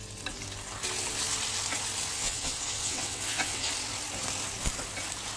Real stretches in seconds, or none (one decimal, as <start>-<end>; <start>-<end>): 0.0-2.1; 3.7-5.4